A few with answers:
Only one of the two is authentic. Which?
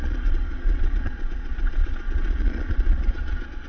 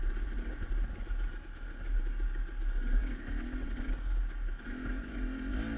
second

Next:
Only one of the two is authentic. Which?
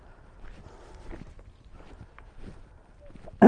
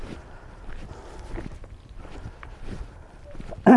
first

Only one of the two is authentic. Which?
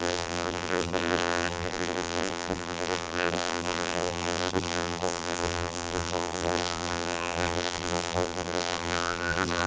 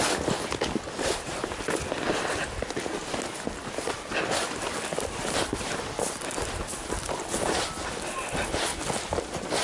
second